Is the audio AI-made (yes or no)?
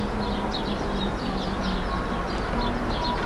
no